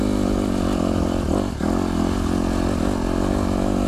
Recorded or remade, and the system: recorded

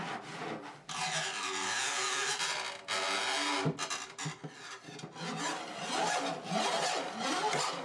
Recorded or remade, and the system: recorded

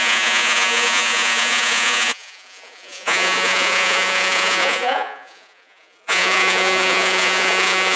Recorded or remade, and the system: remade, vocoder, Vocos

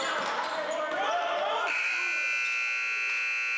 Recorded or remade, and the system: recorded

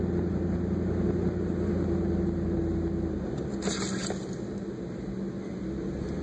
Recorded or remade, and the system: recorded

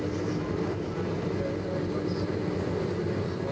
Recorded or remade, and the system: recorded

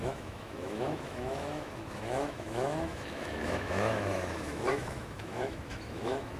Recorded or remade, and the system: remade, autoencoder, DAC-VAE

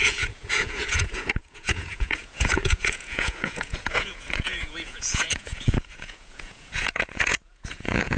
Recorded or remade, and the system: remade, vocoder, Vocos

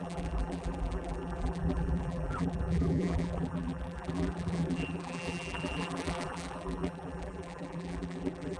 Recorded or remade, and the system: remade, vocoder, BigVGAN v2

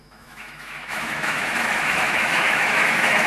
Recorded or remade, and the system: remade, autoencoder, DAC-VAE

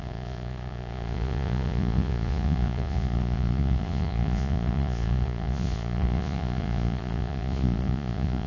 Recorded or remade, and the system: remade, vocoder, Vocos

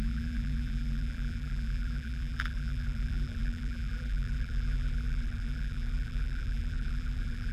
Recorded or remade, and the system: remade, vocoder, BigVGAN v2